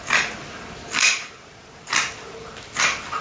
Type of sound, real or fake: real